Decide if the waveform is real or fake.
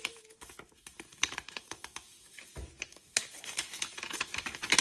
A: fake